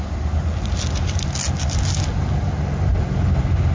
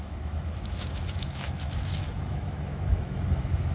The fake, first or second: second